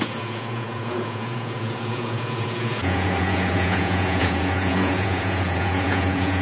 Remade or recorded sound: remade